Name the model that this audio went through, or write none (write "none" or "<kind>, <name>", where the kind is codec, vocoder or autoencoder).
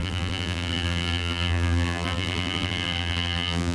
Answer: vocoder, BigVGAN v2